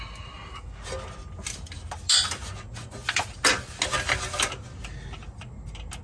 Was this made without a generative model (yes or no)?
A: yes